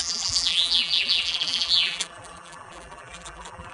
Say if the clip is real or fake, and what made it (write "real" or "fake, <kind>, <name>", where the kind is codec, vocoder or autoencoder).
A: fake, vocoder, BigVGAN v2